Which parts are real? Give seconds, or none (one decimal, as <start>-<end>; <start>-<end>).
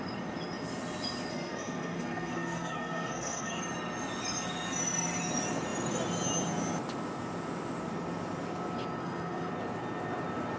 0.0-1.3; 3.6-9.0; 9.5-10.6